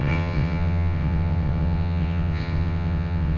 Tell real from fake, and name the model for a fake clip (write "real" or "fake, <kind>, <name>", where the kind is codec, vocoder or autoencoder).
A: fake, vocoder, WaveNeXt